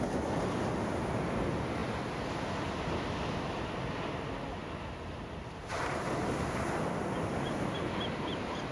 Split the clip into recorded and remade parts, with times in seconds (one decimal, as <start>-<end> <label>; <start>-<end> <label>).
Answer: 0.0-4.6 recorded; 4.6-6.3 remade; 6.3-8.7 recorded